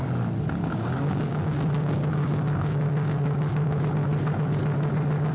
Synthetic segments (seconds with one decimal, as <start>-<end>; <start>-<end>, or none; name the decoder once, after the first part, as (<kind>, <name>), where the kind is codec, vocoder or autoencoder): 0.6-3.8 (codec, DAC)